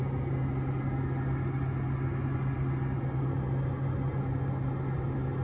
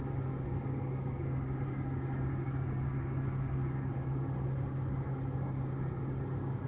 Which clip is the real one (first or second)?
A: first